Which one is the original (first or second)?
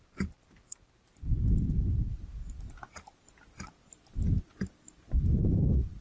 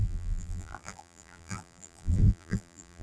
first